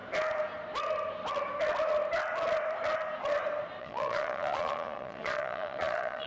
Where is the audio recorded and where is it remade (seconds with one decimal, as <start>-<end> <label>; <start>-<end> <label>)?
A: 0.0-3.8 recorded; 3.8-6.3 remade